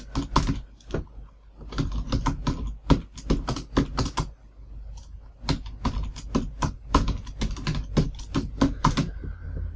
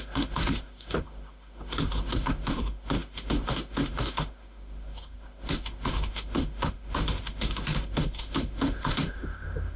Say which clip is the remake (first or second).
second